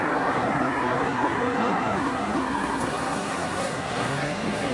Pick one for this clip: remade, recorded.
remade